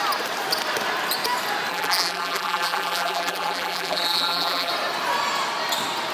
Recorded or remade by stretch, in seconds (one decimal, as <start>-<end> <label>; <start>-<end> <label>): 0.0-1.7 recorded; 1.7-4.7 remade; 4.7-6.1 recorded